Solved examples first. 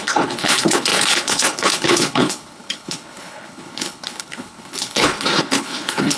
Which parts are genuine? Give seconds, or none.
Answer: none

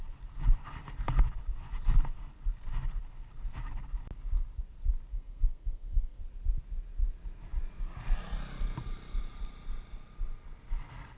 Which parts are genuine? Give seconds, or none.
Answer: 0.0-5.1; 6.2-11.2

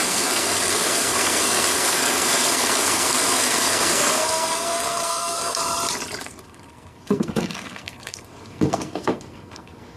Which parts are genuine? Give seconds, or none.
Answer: 5.6-6.2

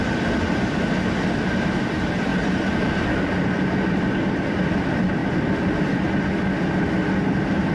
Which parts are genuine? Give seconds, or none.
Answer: 0.0-2.3; 4.1-7.7

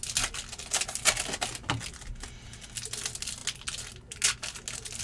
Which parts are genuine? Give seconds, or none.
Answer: 0.0-5.0

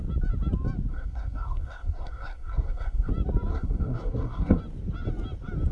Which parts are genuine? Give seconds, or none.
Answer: 0.0-0.9; 3.1-3.5; 4.6-5.7